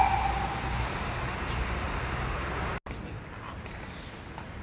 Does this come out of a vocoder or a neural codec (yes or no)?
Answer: no